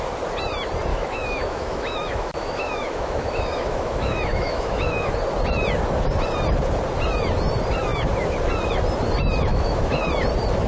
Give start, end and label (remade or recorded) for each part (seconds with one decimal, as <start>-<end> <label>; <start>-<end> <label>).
0.0-0.9 recorded; 0.9-5.1 remade; 5.1-9.5 recorded; 9.5-10.0 remade; 10.0-10.7 recorded